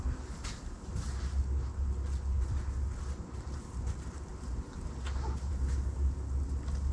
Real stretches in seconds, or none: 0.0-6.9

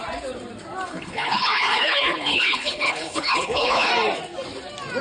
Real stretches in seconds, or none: 0.0-0.9; 3.9-5.0

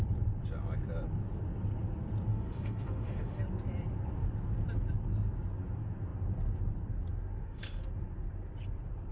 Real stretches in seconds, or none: 0.0-2.3; 3.4-7.4; 7.9-9.1

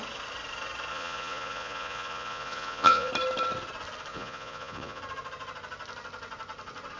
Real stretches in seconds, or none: 0.0-0.9; 3.1-4.1; 5.0-7.0

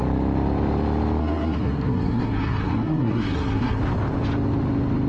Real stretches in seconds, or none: 0.0-1.2; 3.8-5.1

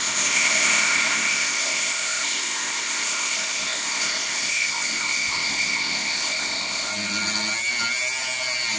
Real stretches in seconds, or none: 6.9-8.8